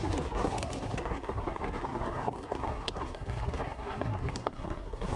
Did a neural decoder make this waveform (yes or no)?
yes